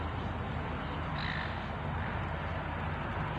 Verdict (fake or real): real